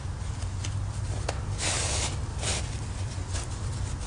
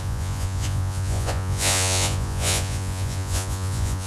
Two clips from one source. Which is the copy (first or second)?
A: second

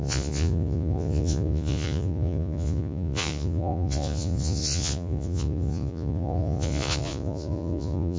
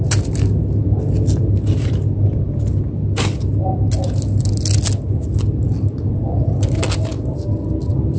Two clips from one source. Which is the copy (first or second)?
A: first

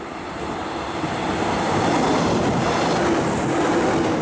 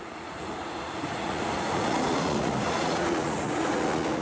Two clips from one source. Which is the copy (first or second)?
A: second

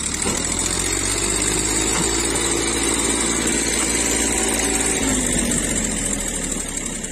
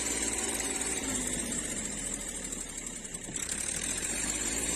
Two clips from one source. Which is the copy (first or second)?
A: second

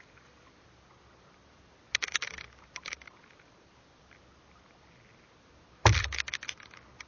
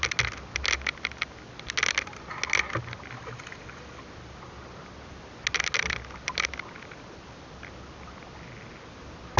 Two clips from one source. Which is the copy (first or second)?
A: first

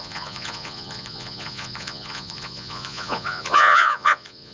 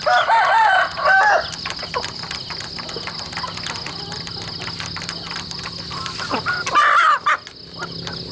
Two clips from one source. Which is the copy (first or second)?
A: first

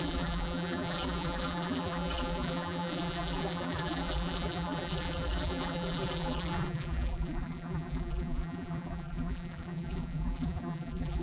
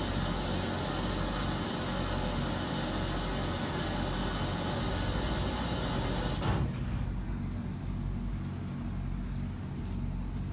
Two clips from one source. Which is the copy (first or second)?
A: first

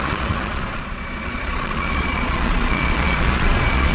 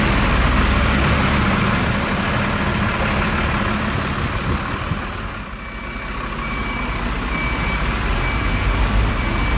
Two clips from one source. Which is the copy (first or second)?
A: first